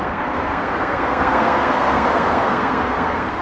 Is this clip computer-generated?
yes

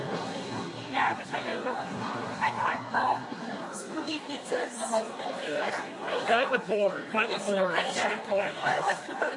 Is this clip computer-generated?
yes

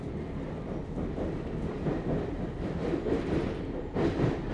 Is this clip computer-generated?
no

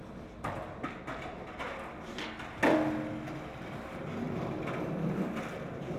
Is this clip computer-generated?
no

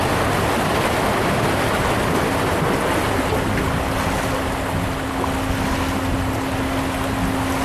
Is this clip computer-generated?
no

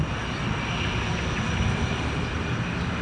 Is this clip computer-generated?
no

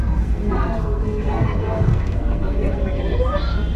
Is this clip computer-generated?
yes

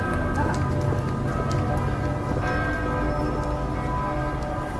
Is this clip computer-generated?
no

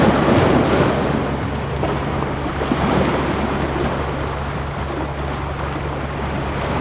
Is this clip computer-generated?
no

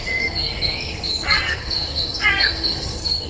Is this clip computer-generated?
yes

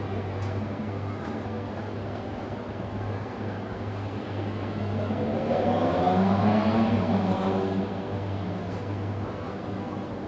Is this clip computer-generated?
yes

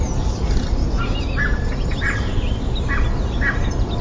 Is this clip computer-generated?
no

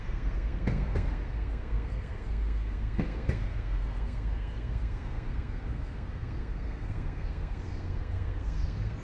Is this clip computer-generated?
yes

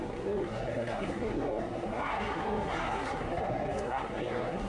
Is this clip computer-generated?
yes